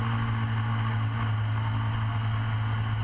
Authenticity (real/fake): real